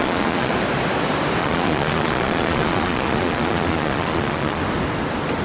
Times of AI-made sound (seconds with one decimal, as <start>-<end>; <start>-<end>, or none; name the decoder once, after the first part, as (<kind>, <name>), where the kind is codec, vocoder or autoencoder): 0.0-0.5 (vocoder, Vocos); 1.4-4.6

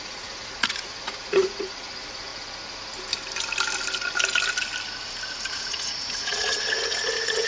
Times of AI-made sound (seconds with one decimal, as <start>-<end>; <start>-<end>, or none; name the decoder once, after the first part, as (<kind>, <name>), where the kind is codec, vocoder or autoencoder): 0.0-2.3 (vocoder, Vocos); 5.5-7.5

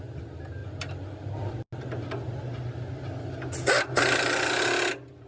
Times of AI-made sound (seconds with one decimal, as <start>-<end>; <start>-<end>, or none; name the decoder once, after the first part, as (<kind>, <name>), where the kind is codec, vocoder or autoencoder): none

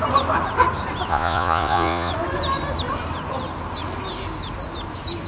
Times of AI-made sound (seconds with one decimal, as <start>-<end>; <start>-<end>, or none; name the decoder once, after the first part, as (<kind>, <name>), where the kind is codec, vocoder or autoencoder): 1.1-2.1 (vocoder, Vocos)